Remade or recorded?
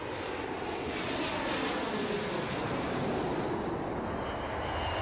recorded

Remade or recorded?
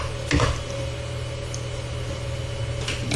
recorded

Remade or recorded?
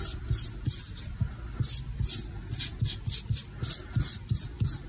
recorded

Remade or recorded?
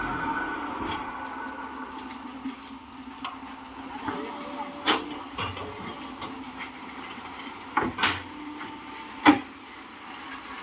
recorded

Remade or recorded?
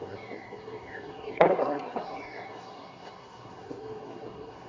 remade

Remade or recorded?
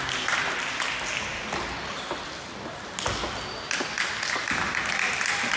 recorded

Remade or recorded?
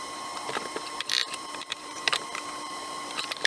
remade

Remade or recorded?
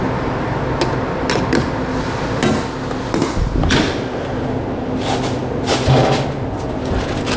recorded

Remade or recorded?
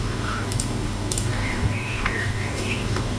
remade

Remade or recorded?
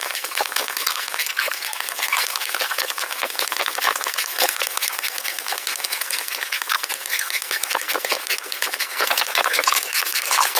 remade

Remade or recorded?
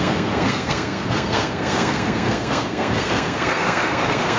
remade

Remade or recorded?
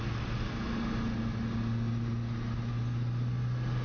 recorded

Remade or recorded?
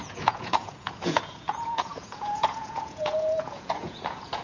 remade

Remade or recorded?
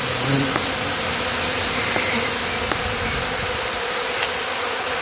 recorded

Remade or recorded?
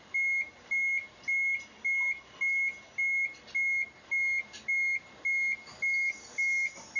recorded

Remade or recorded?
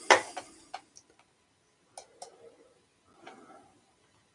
recorded